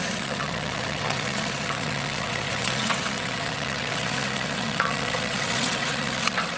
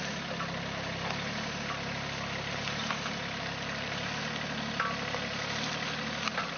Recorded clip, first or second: second